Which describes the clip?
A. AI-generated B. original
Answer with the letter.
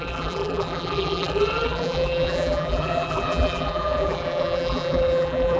A